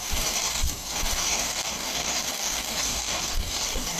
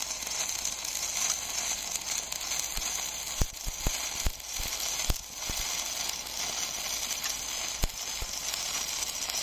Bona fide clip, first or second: second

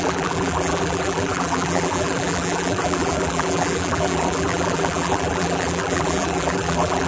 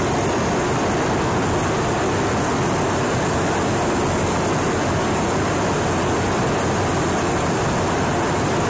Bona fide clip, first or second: second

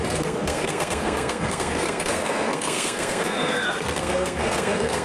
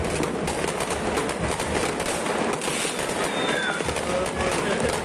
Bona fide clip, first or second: second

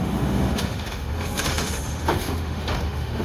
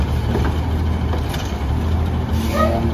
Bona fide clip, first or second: second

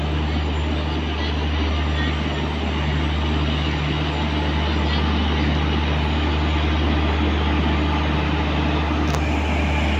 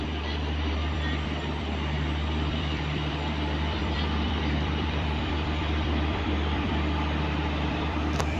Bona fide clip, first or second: first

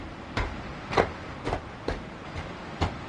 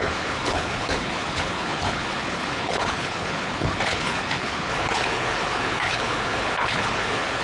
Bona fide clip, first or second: first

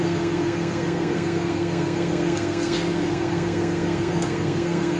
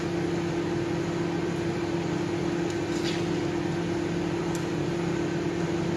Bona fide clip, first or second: second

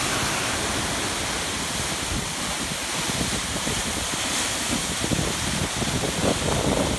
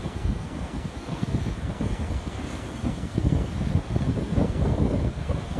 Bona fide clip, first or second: first